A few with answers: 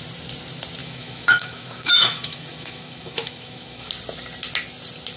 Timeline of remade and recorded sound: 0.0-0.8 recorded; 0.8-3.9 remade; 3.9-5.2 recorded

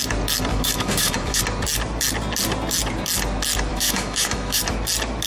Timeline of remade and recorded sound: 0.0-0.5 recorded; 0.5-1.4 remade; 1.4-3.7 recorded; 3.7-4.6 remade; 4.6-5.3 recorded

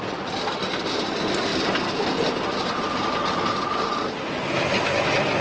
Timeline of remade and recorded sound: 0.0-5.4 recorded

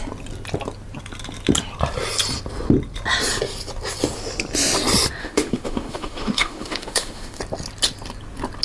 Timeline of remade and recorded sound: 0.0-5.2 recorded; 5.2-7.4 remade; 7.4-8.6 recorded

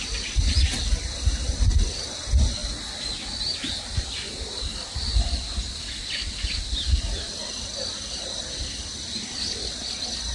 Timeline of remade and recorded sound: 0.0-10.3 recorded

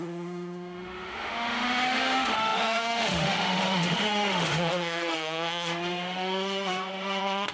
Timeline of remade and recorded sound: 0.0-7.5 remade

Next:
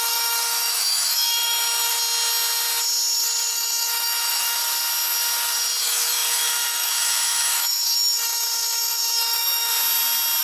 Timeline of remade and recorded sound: 0.0-1.9 remade; 1.9-3.5 recorded; 3.5-4.6 remade; 4.6-5.8 recorded; 5.8-9.7 remade; 9.7-10.4 recorded

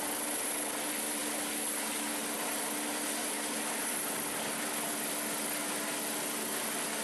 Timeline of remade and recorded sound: 0.0-7.0 recorded